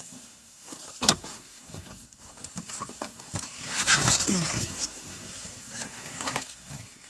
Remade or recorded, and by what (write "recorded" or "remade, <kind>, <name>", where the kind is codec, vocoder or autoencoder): remade, codec, SNAC